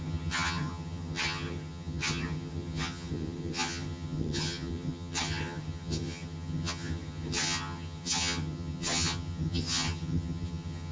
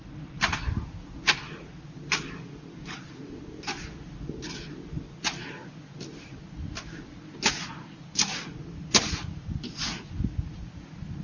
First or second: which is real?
second